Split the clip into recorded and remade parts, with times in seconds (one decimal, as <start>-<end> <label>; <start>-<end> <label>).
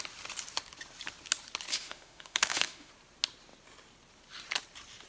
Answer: 0.0-1.7 recorded; 1.7-2.9 remade; 2.9-5.1 recorded